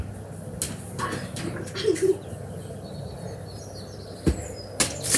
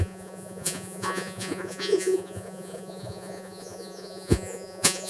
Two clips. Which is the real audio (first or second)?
first